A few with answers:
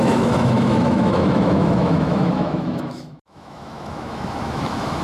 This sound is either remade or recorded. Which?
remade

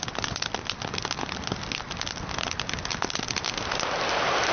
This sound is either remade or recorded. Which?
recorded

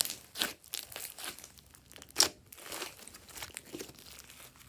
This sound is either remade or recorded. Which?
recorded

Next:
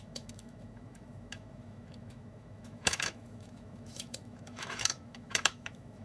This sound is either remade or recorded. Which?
remade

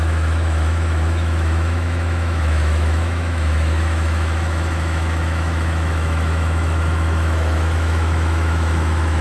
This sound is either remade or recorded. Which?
remade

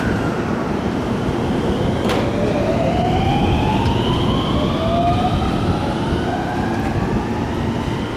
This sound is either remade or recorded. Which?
recorded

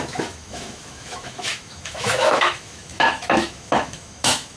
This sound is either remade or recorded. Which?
remade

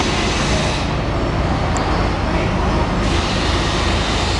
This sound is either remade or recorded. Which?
recorded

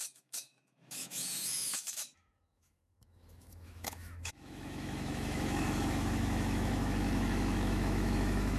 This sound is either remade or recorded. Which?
remade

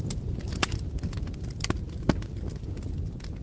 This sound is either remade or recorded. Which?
recorded